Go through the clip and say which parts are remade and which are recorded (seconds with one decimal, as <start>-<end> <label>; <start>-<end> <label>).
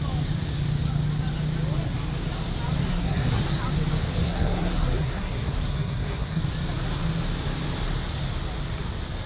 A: 0.0-2.9 recorded; 2.9-3.4 remade; 3.4-4.2 recorded; 4.2-6.4 remade; 6.4-9.3 recorded